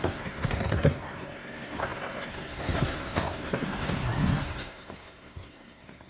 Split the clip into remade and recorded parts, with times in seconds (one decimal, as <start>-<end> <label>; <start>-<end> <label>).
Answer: 0.0-6.1 remade